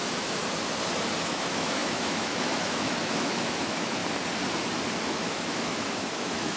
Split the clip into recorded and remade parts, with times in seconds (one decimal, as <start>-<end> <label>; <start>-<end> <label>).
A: 0.0-0.4 remade; 0.4-1.2 recorded; 1.2-4.0 remade; 4.0-5.0 recorded; 5.0-6.6 remade